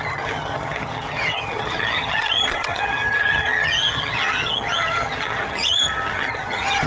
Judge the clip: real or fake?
fake